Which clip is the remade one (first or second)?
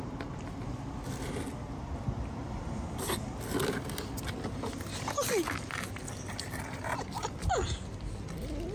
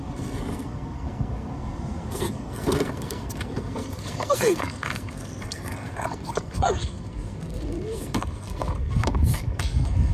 second